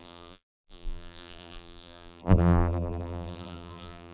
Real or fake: fake